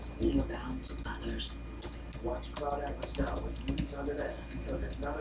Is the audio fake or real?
real